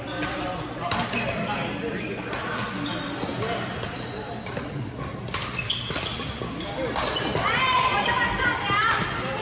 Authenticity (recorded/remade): recorded